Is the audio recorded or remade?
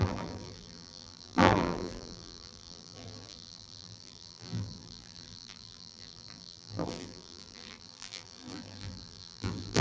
remade